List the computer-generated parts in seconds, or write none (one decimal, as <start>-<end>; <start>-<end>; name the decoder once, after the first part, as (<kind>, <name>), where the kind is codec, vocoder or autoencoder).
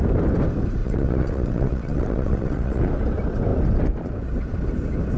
0.8-2.8 (vocoder, WaveNeXt)